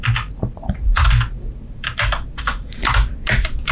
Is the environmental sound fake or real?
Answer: fake